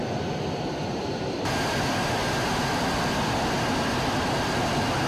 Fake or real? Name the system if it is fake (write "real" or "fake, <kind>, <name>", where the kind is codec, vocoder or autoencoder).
real